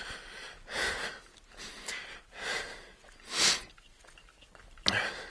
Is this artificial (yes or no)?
no